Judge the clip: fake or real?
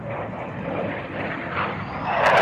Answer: real